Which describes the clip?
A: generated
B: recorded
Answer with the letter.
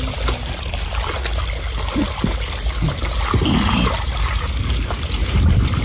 B